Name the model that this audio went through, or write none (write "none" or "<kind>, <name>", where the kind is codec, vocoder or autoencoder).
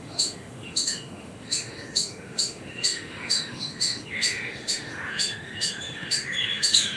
autoencoder, DAC-VAE